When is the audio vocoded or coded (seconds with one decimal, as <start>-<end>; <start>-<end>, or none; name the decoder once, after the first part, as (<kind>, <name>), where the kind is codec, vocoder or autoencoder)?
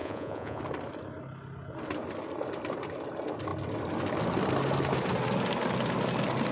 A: 0.0-0.6 (vocoder, Vocos)